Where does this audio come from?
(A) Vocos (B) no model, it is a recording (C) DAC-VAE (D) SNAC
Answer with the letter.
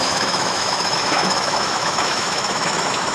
C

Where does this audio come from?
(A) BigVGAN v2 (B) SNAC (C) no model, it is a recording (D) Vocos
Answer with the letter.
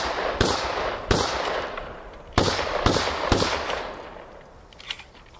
C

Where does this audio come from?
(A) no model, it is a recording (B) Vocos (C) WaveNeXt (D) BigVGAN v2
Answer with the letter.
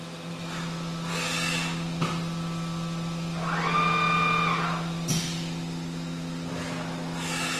A